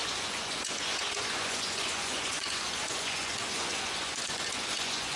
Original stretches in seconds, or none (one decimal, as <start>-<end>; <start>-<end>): none